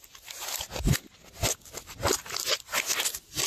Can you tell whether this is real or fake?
real